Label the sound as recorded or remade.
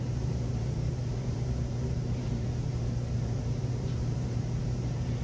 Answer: remade